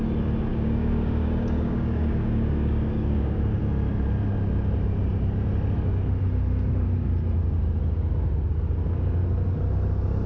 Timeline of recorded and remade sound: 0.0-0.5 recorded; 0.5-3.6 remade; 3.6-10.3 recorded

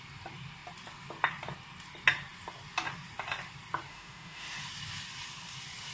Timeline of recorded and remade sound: 0.0-3.9 recorded; 3.9-4.6 remade; 4.6-5.9 recorded

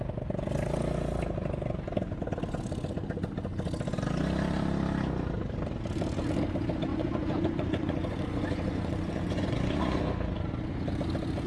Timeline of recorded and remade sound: 0.0-6.9 recorded; 6.9-10.0 remade; 10.0-11.5 recorded

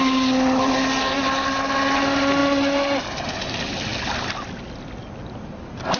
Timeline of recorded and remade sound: 0.0-6.0 recorded

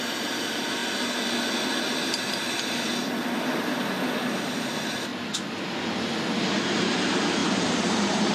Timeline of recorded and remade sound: 0.0-0.8 remade; 0.8-4.5 recorded; 4.5-5.1 remade; 5.1-6.6 recorded; 6.6-8.3 remade

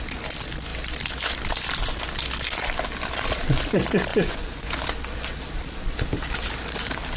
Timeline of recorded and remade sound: 0.0-4.1 recorded; 4.1-4.7 remade; 4.7-7.2 recorded